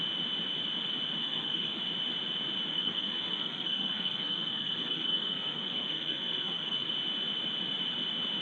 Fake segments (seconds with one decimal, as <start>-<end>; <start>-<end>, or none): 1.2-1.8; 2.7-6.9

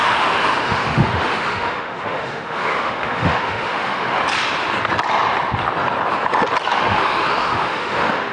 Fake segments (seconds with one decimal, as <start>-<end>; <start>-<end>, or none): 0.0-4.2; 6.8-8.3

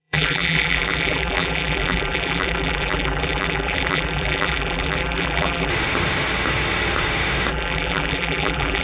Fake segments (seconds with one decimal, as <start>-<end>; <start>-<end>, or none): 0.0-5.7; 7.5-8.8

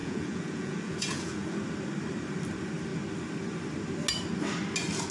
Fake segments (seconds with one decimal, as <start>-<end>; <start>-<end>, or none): 0.0-1.6